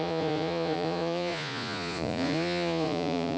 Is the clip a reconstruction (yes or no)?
yes